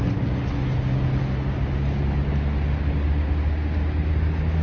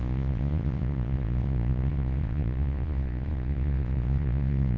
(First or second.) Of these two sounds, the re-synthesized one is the second